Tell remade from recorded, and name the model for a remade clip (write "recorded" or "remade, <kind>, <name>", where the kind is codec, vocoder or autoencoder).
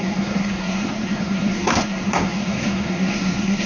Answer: remade, codec, SNAC